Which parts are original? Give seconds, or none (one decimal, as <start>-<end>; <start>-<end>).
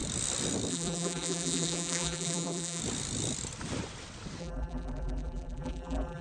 0.0-0.7; 2.8-4.4